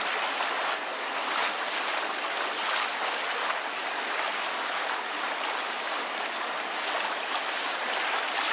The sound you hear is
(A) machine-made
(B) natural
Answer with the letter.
B